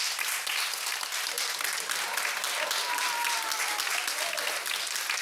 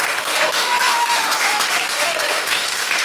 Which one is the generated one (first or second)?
second